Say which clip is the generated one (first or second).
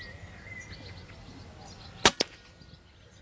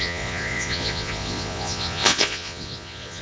second